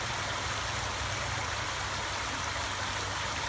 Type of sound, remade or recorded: recorded